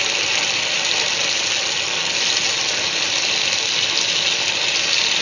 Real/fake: real